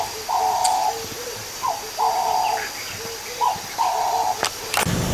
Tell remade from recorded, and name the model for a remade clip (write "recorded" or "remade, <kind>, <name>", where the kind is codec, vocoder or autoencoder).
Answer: recorded